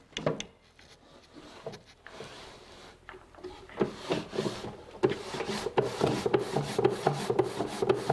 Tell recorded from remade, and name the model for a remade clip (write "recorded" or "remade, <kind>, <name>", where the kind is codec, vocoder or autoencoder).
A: recorded